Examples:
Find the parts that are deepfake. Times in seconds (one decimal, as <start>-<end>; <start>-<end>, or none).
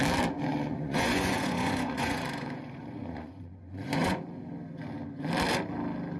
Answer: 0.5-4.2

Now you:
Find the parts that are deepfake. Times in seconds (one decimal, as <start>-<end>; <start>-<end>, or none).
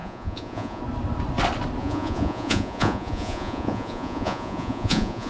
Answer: 0.0-0.8; 1.8-5.3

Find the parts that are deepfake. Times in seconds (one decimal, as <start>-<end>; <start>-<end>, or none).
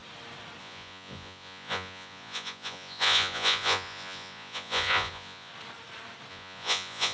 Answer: 0.6-5.5; 6.3-7.1